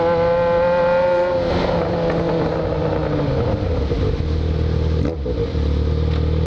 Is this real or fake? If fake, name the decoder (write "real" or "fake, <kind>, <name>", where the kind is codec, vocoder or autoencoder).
real